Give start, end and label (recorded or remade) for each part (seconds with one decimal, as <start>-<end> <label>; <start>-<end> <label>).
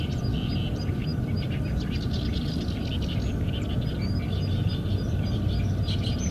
0.0-6.3 recorded